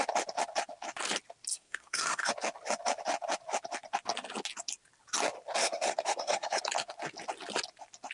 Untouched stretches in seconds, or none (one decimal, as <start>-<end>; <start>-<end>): 0.0-1.5; 2.3-5.6; 6.6-8.1

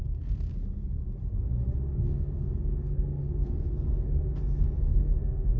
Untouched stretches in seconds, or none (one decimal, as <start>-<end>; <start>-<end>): 0.5-2.0